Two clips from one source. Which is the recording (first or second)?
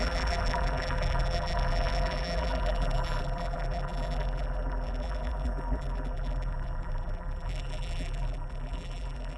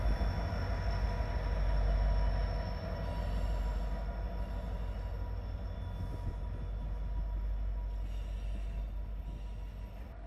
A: second